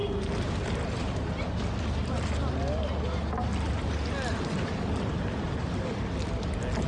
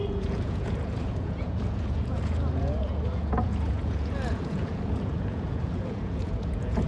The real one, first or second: first